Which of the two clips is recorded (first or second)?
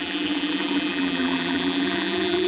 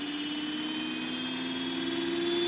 second